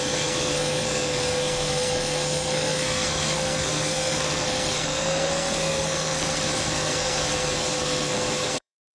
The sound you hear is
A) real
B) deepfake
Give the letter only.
B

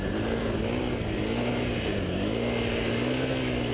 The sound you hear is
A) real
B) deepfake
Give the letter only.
A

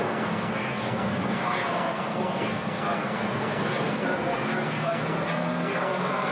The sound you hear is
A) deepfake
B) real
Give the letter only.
A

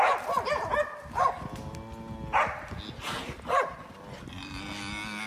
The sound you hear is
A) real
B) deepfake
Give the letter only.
A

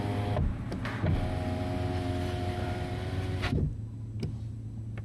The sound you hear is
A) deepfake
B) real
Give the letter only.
B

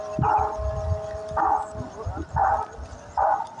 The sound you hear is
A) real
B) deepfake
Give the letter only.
A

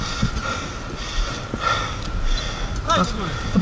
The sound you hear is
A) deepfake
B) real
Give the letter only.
B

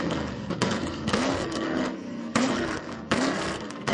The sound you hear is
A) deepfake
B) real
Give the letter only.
A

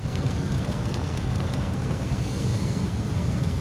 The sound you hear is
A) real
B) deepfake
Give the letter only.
B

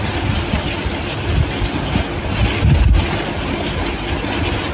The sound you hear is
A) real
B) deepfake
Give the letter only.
A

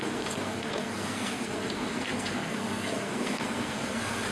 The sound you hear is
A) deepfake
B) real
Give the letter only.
A